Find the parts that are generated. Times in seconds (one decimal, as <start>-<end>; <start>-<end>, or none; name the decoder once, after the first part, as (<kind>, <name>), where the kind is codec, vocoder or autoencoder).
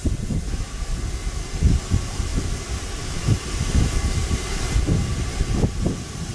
none